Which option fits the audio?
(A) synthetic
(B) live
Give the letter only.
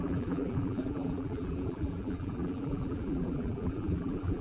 A